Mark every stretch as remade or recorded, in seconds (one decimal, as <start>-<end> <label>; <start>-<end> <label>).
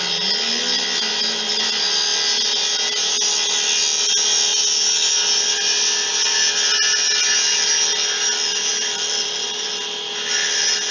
0.0-8.7 recorded; 8.7-9.7 remade; 9.7-10.9 recorded